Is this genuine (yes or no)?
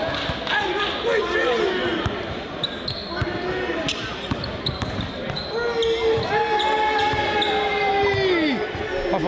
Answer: yes